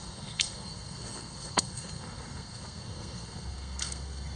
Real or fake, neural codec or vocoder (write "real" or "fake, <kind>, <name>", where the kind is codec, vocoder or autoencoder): fake, codec, SNAC